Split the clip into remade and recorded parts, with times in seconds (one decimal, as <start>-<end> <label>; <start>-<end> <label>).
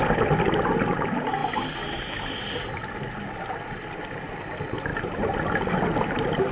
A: 0.0-6.5 recorded